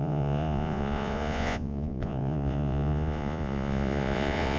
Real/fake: fake